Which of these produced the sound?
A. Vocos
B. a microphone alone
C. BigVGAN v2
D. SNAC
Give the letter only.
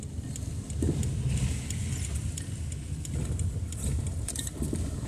B